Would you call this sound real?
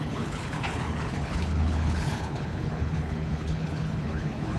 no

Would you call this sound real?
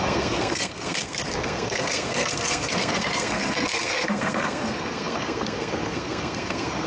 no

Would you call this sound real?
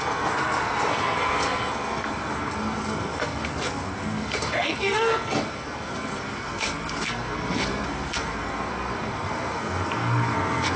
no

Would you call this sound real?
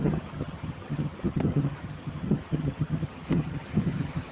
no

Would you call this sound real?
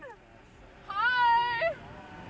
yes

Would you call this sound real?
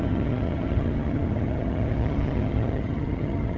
no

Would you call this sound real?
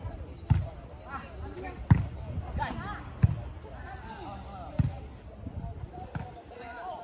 yes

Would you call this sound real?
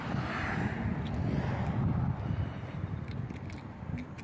yes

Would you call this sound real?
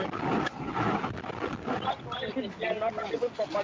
yes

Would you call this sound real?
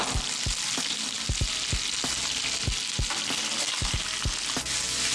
yes